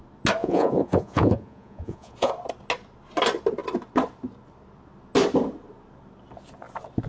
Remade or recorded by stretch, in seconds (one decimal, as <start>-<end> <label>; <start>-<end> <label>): 0.0-0.4 recorded; 0.4-2.3 remade; 2.3-7.1 recorded